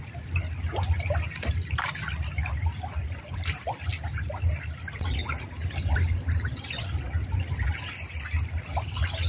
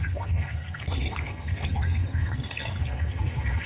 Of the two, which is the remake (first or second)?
second